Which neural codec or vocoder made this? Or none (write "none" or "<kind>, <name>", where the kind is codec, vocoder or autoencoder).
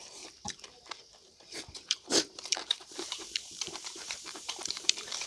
vocoder, BigVGAN v2